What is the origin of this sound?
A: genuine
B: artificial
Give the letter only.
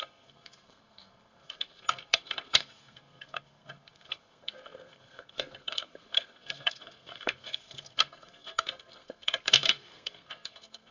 B